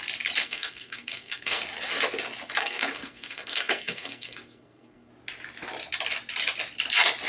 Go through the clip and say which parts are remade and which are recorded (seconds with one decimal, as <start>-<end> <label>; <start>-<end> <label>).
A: 0.0-0.4 recorded; 0.4-1.6 remade; 1.6-2.6 recorded; 2.6-5.1 remade; 5.1-7.3 recorded